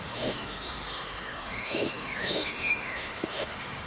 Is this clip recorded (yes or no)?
no